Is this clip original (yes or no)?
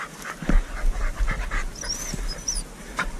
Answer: yes